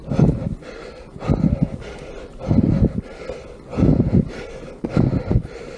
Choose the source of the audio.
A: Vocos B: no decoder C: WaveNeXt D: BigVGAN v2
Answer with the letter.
B